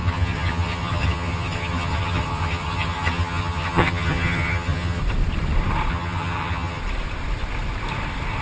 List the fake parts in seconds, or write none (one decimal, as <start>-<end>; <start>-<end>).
0.0-5.0; 5.9-6.8